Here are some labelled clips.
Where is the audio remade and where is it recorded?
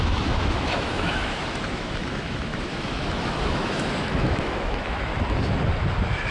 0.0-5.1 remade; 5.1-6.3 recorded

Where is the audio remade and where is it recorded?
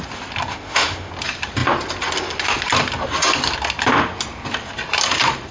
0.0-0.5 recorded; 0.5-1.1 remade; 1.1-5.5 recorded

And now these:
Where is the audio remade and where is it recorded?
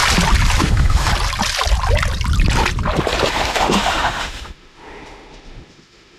0.0-0.6 recorded; 0.6-1.1 remade; 1.1-3.3 recorded; 3.3-6.2 remade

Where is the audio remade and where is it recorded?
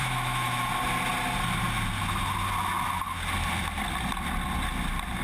0.0-0.7 remade; 0.7-5.2 recorded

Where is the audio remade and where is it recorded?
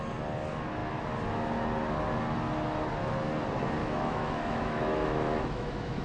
0.0-3.8 recorded; 3.8-6.0 remade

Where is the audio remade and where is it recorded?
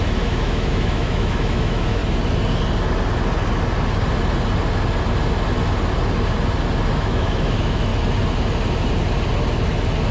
0.0-2.0 remade; 2.0-6.9 recorded; 6.9-7.9 remade; 7.9-10.1 recorded